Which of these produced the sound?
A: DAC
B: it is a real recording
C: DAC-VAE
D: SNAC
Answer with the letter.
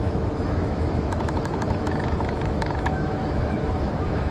C